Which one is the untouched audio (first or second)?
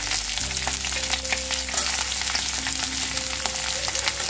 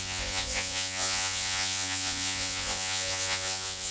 first